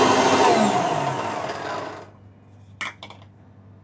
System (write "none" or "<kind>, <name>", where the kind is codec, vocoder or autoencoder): none